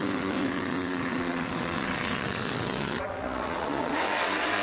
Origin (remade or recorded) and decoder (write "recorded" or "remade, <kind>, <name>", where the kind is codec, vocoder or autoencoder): remade, vocoder, WaveNeXt